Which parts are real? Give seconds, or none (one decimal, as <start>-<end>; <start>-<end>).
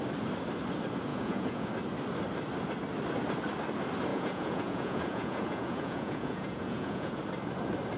0.0-1.1; 1.7-4.1; 7.2-8.0